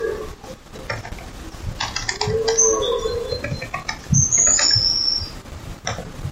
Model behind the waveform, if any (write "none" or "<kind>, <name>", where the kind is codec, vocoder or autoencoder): none